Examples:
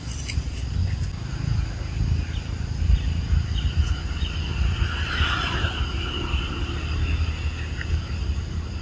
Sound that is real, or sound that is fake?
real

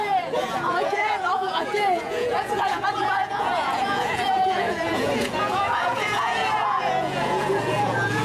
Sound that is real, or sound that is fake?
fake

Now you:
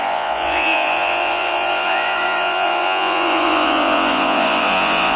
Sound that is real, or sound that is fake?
fake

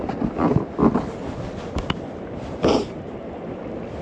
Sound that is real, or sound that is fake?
real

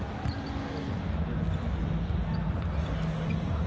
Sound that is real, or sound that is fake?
real